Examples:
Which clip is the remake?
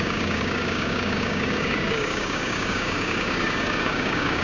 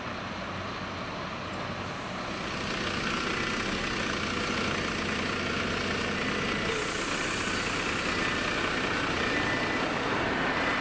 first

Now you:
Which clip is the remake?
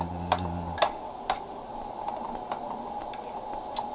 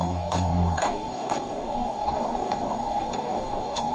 second